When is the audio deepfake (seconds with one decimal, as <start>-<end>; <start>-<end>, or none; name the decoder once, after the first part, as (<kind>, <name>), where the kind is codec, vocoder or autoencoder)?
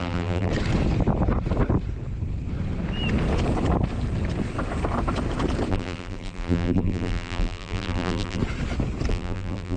0.0-0.5 (vocoder, BigVGAN v2); 5.7-8.4; 9.1-9.8